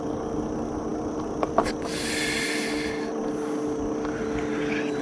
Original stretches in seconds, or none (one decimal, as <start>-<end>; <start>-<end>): 0.0-5.0

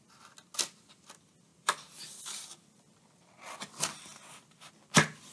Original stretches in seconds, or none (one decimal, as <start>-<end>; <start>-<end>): 0.0-5.3

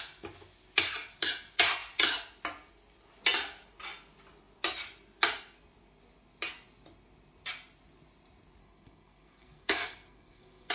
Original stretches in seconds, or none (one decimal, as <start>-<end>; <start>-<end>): 0.0-8.6

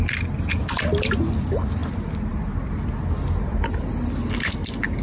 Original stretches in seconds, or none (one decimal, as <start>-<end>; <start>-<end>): 0.0-5.0